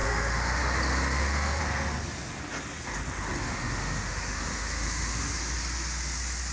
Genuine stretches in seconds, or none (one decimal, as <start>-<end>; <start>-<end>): 0.6-1.1; 1.6-3.4; 5.4-6.5